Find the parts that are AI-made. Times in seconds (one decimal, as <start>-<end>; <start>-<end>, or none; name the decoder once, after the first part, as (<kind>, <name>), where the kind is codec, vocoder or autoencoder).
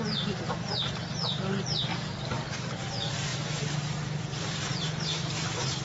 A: 1.9-2.8 (codec, DAC)